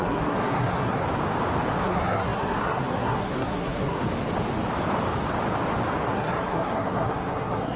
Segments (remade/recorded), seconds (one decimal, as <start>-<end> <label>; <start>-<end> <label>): 0.0-1.0 remade; 1.0-1.8 recorded; 1.8-4.0 remade; 4.0-6.1 recorded; 6.1-7.8 remade